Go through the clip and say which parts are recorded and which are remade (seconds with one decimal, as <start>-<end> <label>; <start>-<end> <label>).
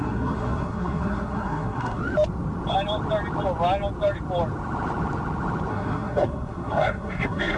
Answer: 0.0-2.0 remade; 2.0-5.7 recorded; 5.7-7.6 remade